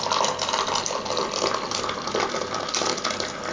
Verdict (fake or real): real